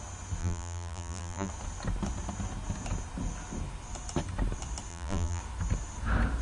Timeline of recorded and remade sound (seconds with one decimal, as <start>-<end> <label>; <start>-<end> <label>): 0.0-0.4 recorded; 0.4-1.5 remade; 1.5-4.9 recorded; 4.9-5.4 remade; 5.4-6.4 recorded